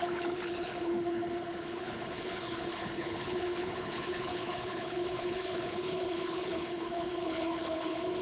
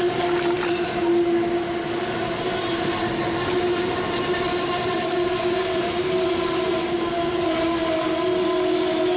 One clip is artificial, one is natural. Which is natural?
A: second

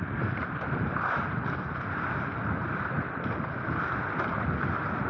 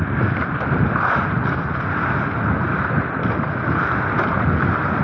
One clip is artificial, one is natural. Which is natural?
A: second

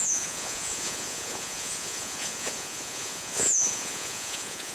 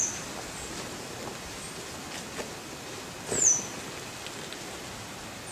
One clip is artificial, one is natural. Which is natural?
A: second